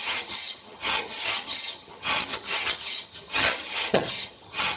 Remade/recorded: remade